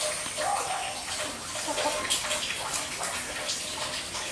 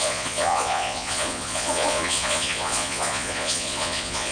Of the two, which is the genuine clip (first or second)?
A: first